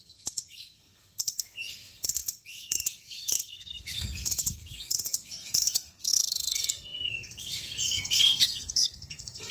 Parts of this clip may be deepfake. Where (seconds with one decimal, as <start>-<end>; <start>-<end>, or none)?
0.0-9.5